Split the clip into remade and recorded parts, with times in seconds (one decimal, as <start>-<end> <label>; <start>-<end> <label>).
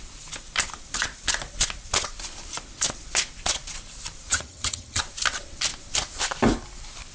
0.0-4.3 recorded; 4.3-5.0 remade; 5.0-7.1 recorded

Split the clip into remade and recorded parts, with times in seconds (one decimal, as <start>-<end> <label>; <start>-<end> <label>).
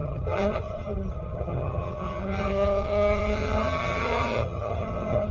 0.0-5.3 remade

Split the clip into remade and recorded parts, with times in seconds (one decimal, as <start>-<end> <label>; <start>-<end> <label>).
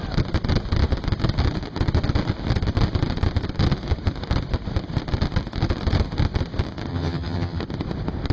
0.0-6.9 recorded; 6.9-7.6 remade; 7.6-8.3 recorded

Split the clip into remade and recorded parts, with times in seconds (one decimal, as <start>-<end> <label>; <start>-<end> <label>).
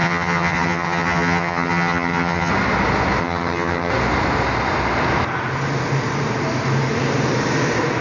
0.0-2.5 remade; 2.5-3.2 recorded; 3.2-3.9 remade; 3.9-8.0 recorded